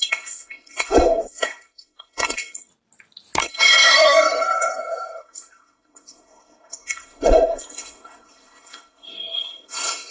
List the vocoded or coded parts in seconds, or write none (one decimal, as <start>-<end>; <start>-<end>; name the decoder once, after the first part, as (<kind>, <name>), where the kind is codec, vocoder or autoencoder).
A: 0.0-2.7 (codec, SNAC); 3.4-10.1